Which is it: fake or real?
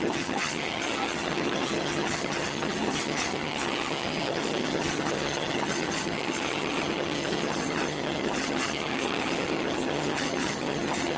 fake